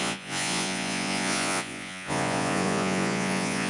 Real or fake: fake